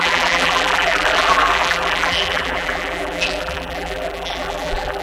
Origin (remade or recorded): remade